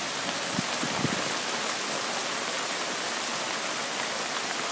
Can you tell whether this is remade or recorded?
recorded